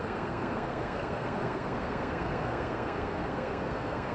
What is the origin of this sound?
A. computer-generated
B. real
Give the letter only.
A